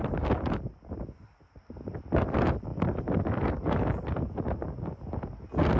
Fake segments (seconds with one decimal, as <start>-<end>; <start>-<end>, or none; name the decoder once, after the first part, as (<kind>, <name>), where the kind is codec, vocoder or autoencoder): none